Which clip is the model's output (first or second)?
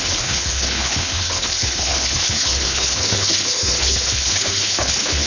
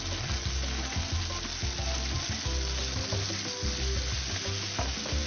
first